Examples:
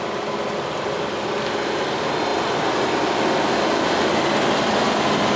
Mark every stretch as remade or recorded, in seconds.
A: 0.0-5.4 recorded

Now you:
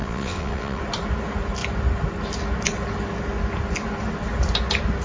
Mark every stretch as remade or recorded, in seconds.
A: 0.0-0.8 remade; 0.8-5.0 recorded

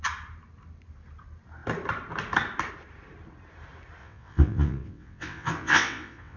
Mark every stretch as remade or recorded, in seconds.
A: 0.0-4.0 recorded; 4.0-6.4 remade

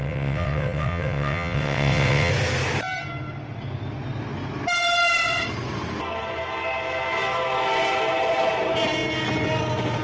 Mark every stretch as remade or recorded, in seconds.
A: 0.0-2.3 remade; 2.3-10.0 recorded

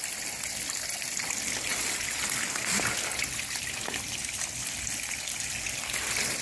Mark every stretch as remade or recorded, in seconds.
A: 0.0-6.4 recorded

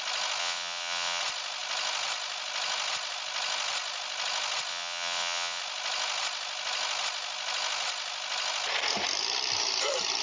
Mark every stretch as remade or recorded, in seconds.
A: 0.0-0.4 recorded; 0.4-1.2 remade; 1.2-4.7 recorded; 4.7-5.6 remade; 5.6-10.2 recorded